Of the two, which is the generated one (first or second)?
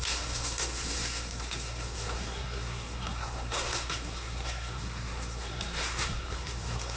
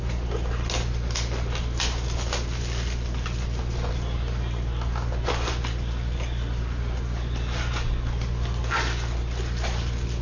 first